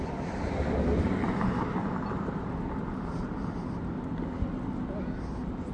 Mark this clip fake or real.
real